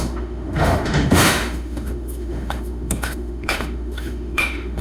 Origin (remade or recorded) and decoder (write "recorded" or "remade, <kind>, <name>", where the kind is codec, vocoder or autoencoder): remade, autoencoder, DAC-VAE